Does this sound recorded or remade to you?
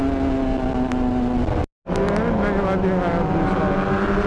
recorded